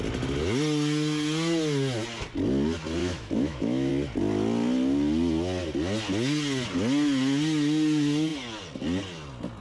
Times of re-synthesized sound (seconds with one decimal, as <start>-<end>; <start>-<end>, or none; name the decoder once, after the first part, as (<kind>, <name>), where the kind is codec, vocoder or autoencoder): 3.0-3.9 (autoencoder, DAC-VAE)